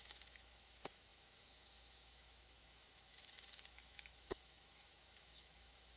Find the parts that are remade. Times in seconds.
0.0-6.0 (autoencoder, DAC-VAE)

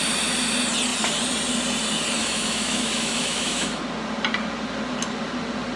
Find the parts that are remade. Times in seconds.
2.2-3.8 (autoencoder, DAC-VAE)

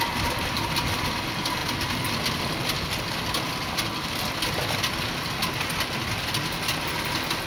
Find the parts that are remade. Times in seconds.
none